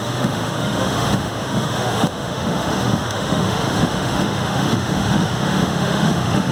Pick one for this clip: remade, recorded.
remade